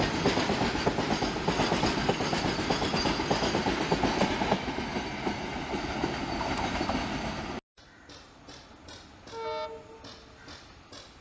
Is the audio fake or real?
real